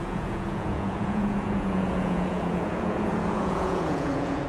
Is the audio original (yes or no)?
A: no